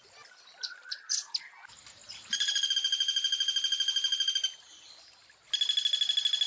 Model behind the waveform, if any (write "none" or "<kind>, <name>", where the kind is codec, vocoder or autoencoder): none